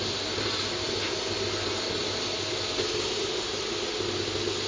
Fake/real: real